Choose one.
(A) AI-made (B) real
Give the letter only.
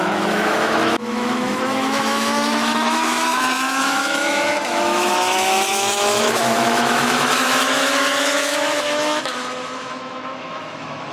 A